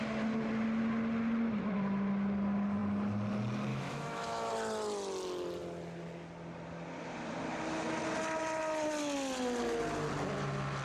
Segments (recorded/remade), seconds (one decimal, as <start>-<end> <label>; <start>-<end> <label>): 0.0-3.7 recorded; 3.7-4.5 remade; 4.5-10.8 recorded